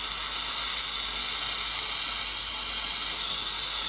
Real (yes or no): yes